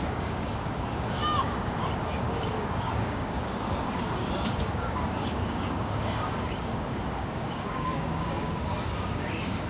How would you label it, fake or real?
fake